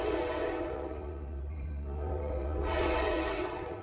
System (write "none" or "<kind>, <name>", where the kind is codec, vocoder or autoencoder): vocoder, WaveNeXt